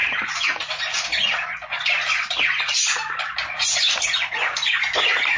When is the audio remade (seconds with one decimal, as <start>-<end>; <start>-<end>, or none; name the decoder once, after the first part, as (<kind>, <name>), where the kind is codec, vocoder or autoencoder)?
none